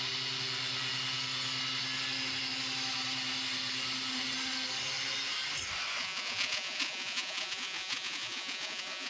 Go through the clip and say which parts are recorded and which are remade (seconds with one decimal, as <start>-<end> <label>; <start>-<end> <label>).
0.0-6.0 recorded; 6.0-9.1 remade